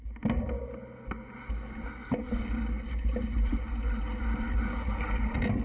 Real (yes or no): yes